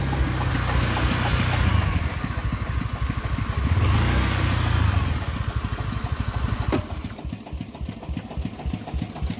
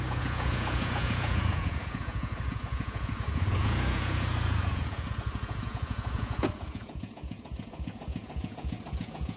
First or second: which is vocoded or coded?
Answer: second